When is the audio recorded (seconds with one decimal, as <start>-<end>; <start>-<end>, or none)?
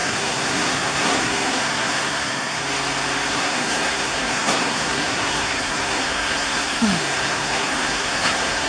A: 2.6-3.3